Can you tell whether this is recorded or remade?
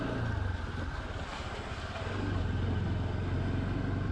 recorded